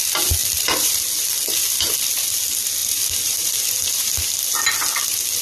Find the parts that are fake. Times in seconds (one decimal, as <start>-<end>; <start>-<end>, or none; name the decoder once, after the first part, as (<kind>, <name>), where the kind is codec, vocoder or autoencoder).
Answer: 0.4-1.0 (vocoder, BigVGAN v2); 2.8-3.5

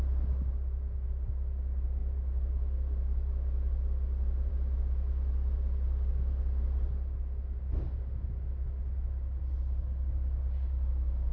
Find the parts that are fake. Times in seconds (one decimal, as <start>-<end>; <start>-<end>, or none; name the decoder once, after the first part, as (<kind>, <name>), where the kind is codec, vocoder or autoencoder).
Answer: none

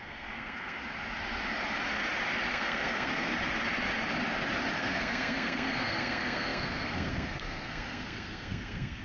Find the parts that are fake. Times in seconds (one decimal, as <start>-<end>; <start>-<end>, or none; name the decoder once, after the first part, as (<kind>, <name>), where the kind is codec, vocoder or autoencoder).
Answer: 0.0-0.8 (codec, SNAC); 2.5-3.3; 4.8-9.0

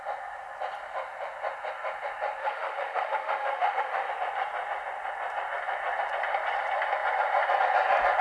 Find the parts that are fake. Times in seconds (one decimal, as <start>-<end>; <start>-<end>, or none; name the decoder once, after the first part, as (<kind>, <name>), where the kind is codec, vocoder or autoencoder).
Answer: 2.4-4.1 (autoencoder, DAC-VAE)

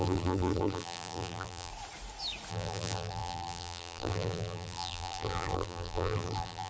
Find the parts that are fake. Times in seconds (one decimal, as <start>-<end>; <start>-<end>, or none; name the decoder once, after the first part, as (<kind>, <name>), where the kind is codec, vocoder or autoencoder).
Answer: 0.0-1.7 (vocoder, BigVGAN v2); 2.5-6.7

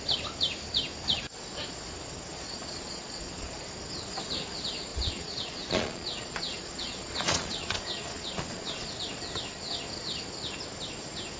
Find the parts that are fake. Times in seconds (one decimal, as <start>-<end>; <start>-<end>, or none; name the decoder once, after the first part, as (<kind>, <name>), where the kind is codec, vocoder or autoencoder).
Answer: 2.3-3.6 (vocoder, Vocos); 4.9-8.9